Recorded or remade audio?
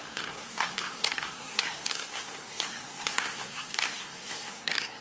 remade